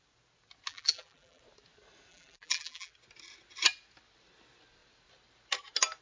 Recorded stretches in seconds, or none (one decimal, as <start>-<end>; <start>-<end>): 0.0-0.7; 1.4-2.1; 2.9-6.0